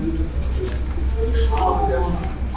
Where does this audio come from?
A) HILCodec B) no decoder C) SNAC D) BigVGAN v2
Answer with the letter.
B